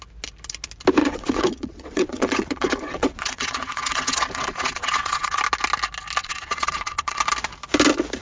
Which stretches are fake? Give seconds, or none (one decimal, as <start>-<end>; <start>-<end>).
1.0-5.4; 6.2-7.2

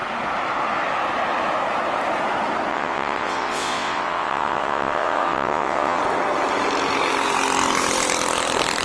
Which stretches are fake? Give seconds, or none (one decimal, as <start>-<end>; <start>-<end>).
2.7-6.0

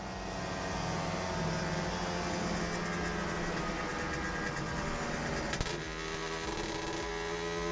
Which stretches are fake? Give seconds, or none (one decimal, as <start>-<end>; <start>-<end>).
none

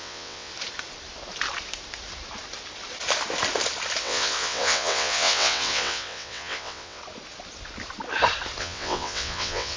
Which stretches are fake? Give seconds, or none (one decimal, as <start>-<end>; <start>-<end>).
0.0-0.5; 4.0-7.0; 8.6-9.8

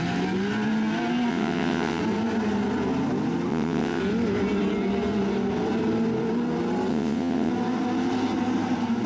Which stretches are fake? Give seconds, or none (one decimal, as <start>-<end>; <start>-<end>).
1.3-2.0; 3.5-4.0; 6.9-7.5